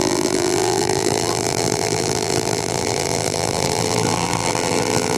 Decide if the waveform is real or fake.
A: fake